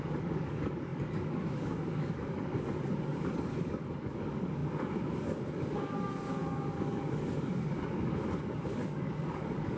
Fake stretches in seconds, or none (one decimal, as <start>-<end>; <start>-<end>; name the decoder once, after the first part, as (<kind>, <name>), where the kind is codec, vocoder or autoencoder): 0.0-9.8 (codec, DAC)